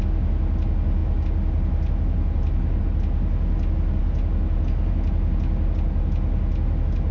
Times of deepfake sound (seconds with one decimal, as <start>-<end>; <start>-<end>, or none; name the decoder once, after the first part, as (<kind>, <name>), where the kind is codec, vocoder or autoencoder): none